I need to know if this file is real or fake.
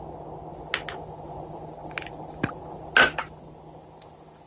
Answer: real